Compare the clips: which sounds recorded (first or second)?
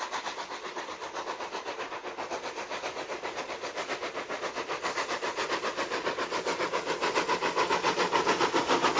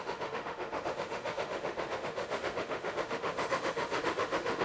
first